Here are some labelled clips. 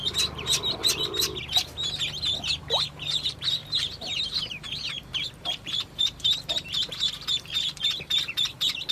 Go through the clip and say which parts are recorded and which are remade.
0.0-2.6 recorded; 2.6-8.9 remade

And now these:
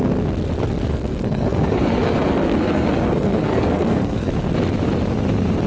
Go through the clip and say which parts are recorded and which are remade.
0.0-0.9 recorded; 0.9-4.3 remade; 4.3-5.7 recorded

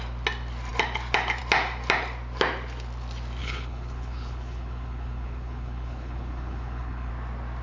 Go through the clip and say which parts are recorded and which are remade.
0.0-3.4 recorded; 3.4-7.1 remade; 7.1-7.6 recorded

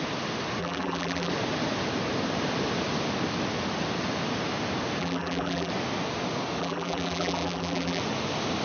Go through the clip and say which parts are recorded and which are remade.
0.0-0.6 recorded; 0.6-1.3 remade; 1.3-5.0 recorded; 5.0-5.7 remade; 5.7-6.6 recorded; 6.6-8.0 remade; 8.0-8.6 recorded

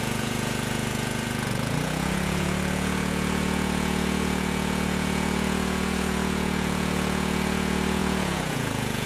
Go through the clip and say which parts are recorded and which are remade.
0.0-9.1 remade

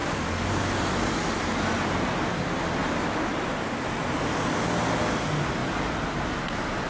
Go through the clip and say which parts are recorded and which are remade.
0.0-6.9 recorded

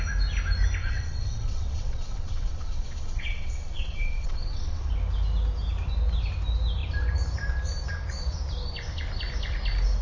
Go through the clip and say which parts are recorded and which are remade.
0.0-0.8 recorded; 0.8-4.9 remade; 4.9-10.0 recorded

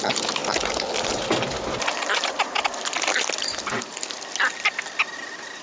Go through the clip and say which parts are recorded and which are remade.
0.0-5.6 recorded